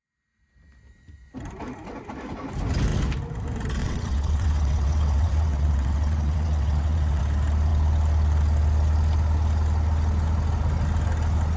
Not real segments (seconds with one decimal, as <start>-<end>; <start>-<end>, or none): 3.8-7.2